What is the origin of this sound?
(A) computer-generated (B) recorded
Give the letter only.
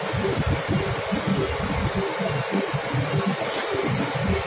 B